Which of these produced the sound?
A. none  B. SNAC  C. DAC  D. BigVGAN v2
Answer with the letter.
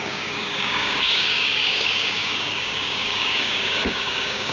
C